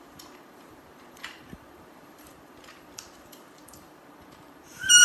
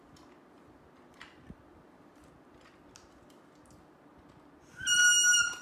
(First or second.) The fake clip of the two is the first